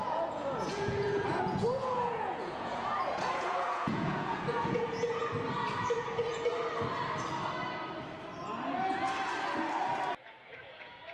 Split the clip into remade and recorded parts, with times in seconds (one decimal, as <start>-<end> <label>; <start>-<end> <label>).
0.0-5.2 remade; 5.2-10.2 recorded; 10.2-11.1 remade